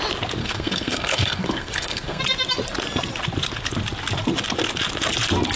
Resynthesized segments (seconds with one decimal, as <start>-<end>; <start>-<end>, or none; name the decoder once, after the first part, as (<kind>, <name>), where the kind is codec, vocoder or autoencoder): 0.4-2.2 (codec, SNAC)